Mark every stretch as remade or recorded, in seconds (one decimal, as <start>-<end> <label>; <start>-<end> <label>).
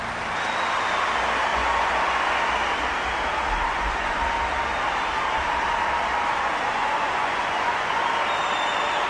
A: 0.0-1.5 recorded; 1.5-2.4 remade; 2.4-3.7 recorded; 3.7-4.2 remade; 4.2-6.3 recorded; 6.3-8.0 remade; 8.0-9.1 recorded